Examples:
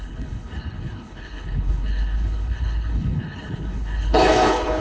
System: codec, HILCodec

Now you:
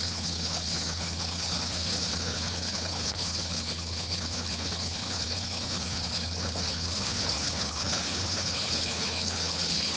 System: codec, HILCodec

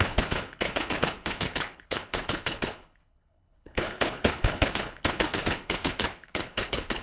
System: codec, HILCodec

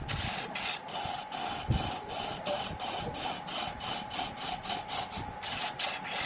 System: none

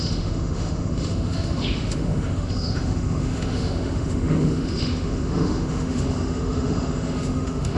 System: autoencoder, DAC-VAE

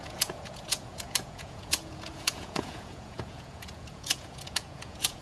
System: vocoder, Vocos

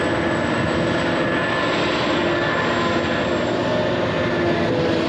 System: none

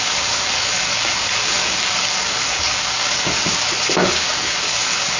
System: codec, DAC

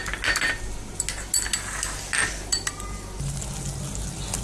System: none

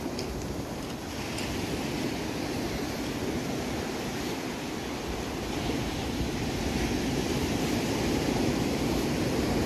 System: none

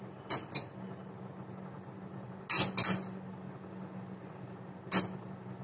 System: none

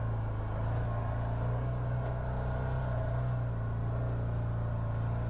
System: none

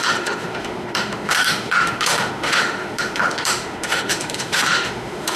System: autoencoder, DAC-VAE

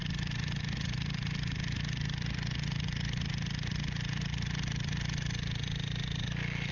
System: none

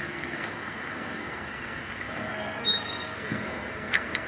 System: codec, SNAC